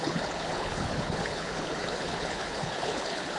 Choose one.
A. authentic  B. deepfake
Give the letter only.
B